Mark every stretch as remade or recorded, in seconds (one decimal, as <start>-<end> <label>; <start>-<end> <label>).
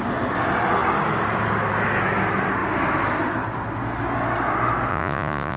0.0-4.9 recorded; 4.9-5.6 remade